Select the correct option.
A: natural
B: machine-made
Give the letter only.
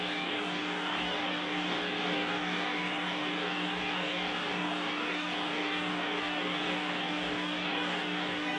B